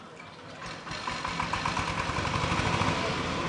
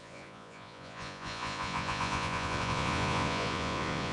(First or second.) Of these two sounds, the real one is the first